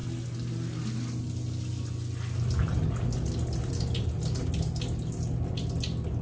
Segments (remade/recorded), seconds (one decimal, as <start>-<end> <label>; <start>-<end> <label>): 0.0-6.2 recorded